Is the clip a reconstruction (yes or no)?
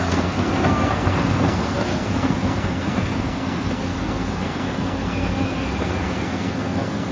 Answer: yes